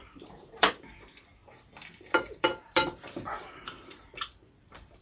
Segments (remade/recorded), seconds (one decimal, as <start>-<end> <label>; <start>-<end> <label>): 0.0-5.0 remade